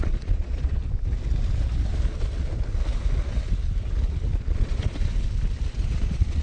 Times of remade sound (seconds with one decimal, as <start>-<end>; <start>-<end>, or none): 0.0-0.8; 4.4-5.1; 5.7-6.4